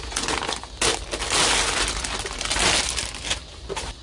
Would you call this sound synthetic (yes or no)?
no